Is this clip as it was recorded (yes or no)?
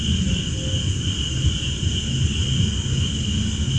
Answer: yes